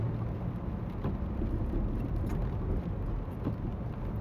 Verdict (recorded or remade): recorded